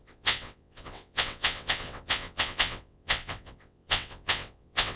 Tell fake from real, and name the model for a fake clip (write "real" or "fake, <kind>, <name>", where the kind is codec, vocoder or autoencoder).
fake, vocoder, WaveNeXt